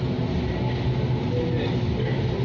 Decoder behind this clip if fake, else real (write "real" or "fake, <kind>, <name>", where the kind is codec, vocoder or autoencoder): real